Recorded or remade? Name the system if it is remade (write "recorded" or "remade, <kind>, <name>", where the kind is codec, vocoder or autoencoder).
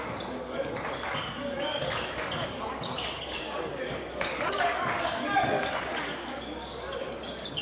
remade, codec, DAC